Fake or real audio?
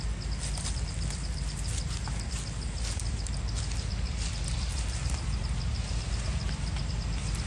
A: real